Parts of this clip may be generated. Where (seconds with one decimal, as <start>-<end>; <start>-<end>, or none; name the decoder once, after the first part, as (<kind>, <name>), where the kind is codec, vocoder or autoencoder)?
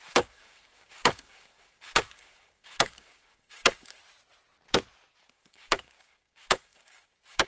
0.0-4.0 (codec, DAC); 5.3-7.5